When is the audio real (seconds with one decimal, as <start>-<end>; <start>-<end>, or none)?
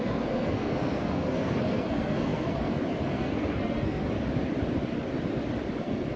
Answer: 4.0-5.8